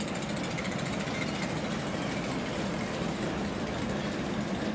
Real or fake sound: real